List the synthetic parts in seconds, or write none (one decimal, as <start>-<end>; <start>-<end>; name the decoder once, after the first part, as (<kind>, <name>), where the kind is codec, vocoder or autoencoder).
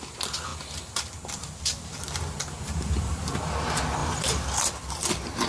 none